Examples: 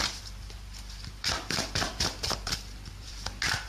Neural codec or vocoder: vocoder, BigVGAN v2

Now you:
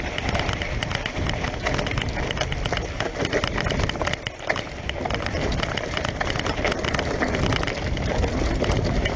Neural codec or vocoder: none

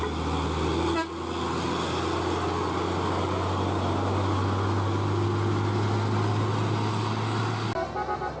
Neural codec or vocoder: none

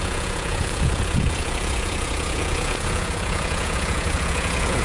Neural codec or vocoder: vocoder, Vocos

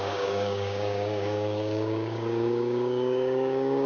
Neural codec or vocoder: codec, DAC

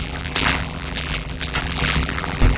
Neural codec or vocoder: vocoder, BigVGAN v2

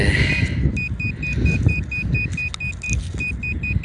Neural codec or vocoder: none